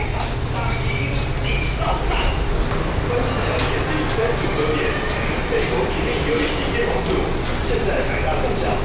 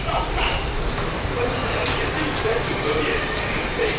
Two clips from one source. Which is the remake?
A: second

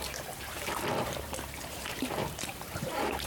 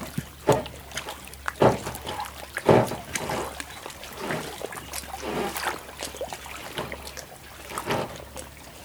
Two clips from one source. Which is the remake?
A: first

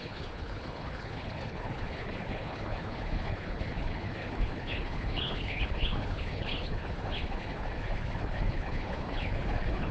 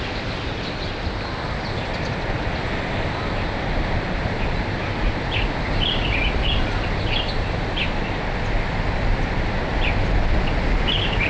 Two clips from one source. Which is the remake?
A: first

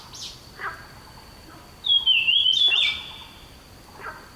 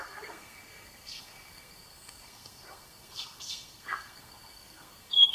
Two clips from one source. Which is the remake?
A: second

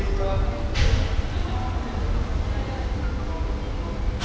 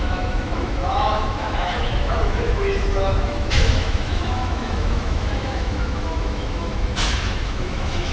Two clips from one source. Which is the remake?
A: second